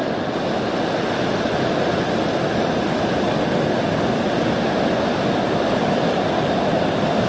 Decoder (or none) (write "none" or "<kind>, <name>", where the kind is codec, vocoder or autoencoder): none